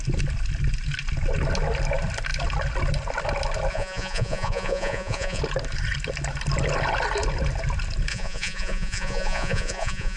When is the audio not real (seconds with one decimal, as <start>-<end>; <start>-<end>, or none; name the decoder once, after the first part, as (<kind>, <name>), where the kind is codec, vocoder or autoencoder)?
3.7-5.4 (vocoder, Vocos); 8.1-10.2

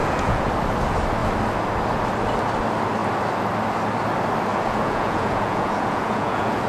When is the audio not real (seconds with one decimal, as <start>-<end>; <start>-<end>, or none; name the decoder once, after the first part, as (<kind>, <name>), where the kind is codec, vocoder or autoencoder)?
0.0-0.5 (vocoder, Vocos); 4.5-6.7